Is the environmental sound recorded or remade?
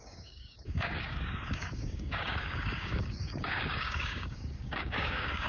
remade